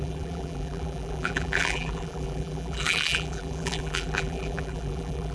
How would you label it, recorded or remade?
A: remade